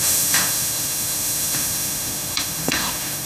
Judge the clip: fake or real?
fake